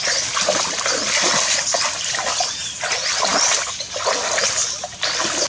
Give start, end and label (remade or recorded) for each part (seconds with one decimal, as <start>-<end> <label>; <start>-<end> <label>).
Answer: 0.0-5.5 recorded